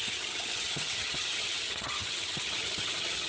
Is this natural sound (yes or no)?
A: no